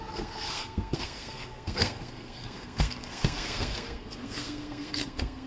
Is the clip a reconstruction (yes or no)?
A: yes